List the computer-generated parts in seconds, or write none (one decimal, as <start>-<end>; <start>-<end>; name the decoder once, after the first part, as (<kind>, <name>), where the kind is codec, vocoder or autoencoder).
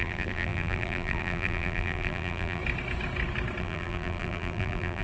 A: 0.0-2.6 (vocoder, BigVGAN v2); 3.6-5.0